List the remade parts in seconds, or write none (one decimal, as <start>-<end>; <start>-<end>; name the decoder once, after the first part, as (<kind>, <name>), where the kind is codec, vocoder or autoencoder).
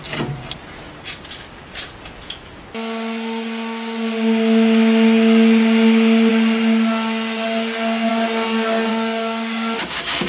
8.9-10.3 (codec, DAC)